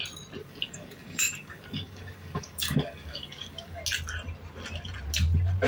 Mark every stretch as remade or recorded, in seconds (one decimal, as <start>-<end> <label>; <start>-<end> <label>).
0.0-0.4 recorded; 0.4-3.8 remade; 3.8-5.7 recorded